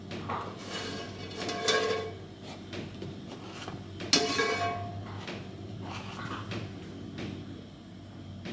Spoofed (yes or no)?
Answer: no